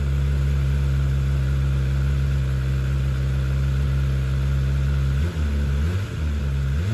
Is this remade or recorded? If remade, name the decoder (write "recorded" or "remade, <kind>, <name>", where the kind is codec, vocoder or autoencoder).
recorded